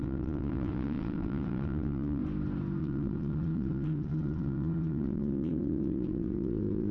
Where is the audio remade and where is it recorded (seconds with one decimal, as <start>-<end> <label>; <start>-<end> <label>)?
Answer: 0.0-2.2 remade; 2.2-2.8 recorded; 2.8-6.9 remade